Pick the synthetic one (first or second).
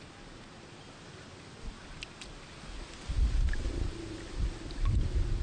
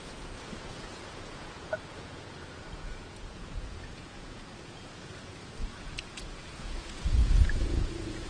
second